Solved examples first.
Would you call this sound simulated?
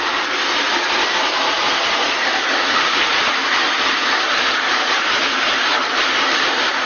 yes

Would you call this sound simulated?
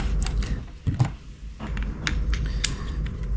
no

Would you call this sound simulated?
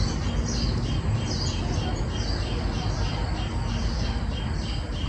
no